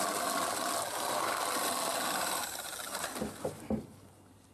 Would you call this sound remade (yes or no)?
no